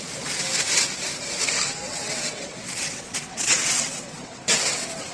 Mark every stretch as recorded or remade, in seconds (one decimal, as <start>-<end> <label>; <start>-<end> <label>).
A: 0.0-1.9 recorded; 1.9-5.1 remade